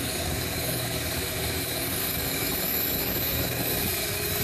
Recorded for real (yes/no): no